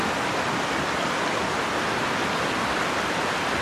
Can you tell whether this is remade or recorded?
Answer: recorded